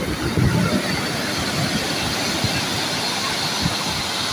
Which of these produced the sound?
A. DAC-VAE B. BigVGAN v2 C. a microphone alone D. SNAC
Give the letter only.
C